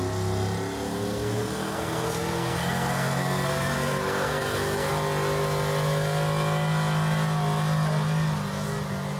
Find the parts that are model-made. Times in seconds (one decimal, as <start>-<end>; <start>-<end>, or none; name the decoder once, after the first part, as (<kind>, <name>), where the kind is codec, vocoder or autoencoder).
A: 1.1-4.9 (codec, SNAC)

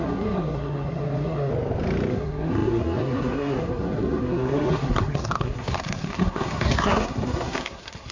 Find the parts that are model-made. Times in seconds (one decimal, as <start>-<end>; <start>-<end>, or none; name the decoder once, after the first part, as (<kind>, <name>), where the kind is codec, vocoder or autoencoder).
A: 0.0-1.5 (codec, SNAC); 2.1-8.1

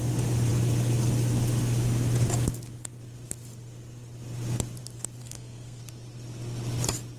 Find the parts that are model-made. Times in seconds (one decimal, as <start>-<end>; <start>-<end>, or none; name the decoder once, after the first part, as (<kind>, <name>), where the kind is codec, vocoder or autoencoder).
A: 5.2-5.8 (codec, SNAC)

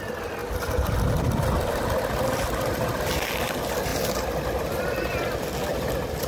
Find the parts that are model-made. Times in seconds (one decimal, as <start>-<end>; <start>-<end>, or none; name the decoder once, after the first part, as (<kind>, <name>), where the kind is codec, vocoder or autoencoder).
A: none

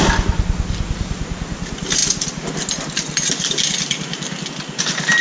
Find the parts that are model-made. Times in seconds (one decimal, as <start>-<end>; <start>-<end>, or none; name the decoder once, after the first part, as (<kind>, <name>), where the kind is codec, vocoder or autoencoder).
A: none

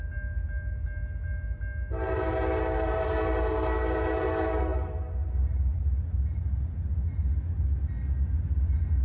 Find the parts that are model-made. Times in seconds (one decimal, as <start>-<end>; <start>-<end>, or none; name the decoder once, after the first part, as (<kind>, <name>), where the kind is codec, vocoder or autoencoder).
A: none

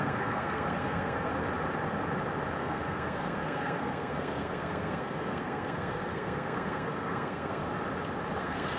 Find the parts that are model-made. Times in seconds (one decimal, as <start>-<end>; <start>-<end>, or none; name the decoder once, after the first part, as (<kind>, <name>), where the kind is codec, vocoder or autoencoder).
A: 0.0-1.3 (codec, SNAC); 2.6-7.6; 8.4-8.8